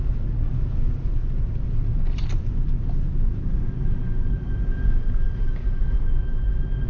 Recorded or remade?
recorded